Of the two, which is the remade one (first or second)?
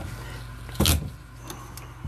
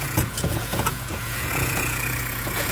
second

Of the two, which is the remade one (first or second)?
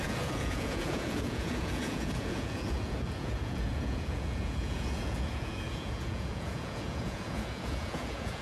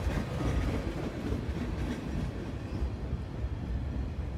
first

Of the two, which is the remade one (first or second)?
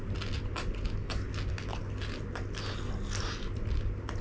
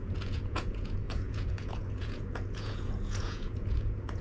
second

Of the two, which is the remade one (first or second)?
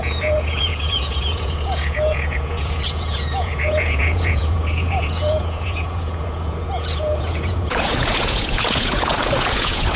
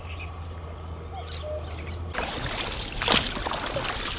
first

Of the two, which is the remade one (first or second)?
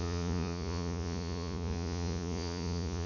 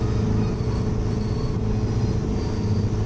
first